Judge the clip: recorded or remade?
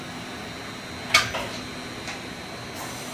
recorded